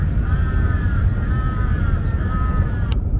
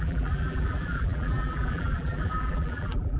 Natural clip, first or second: first